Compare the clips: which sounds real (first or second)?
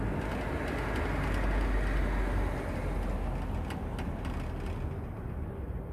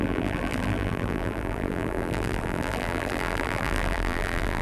first